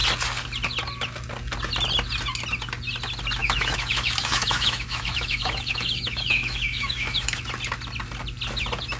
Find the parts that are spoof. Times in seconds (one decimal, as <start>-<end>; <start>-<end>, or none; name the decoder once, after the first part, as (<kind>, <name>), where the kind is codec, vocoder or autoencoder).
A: 3.4-7.4 (autoencoder, DAC-VAE)

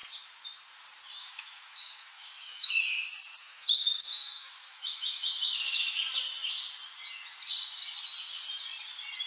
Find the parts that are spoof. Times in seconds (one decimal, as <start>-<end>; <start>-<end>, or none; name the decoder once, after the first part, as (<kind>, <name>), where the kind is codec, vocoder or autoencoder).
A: 1.2-2.8 (autoencoder, DAC-VAE); 3.4-5.4

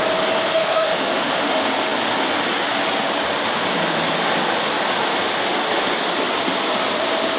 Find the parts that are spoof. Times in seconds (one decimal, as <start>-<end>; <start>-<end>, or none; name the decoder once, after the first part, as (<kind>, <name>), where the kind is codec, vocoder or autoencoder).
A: 0.5-1.5 (autoencoder, DAC-VAE)

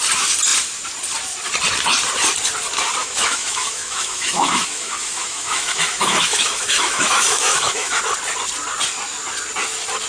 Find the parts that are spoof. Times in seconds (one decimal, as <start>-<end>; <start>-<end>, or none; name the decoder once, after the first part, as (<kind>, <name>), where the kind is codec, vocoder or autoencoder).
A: 3.0-8.0 (autoencoder, DAC-VAE)

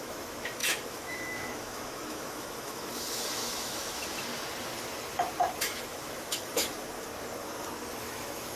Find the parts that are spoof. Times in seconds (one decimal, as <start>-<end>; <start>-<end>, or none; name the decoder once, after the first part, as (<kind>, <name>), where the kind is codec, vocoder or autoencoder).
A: 0.0-4.3 (autoencoder, DAC-VAE); 5.6-6.7; 8.0-8.6

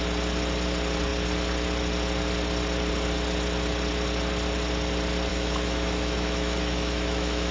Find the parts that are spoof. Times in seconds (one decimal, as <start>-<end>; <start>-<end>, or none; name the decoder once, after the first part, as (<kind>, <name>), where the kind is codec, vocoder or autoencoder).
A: 5.3-7.5 (autoencoder, DAC-VAE)